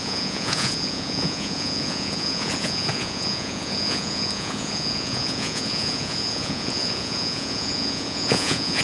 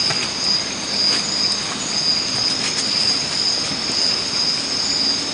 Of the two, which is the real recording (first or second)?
second